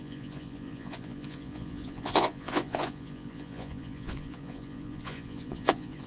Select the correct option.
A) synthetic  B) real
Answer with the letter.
A